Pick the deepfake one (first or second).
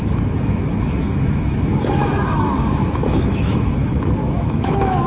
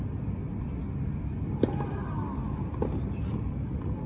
first